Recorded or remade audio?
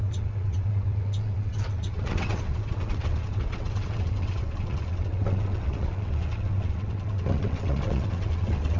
remade